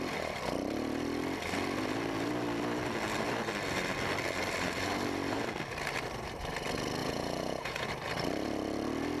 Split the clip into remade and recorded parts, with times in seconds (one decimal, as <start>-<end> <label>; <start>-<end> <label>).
0.0-7.0 recorded; 7.0-7.9 remade; 7.9-9.2 recorded